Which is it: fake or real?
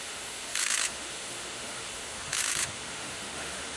fake